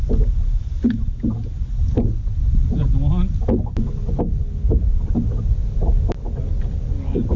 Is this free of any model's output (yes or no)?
yes